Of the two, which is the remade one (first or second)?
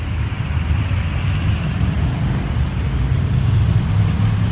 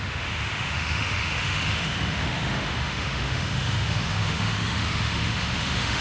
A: second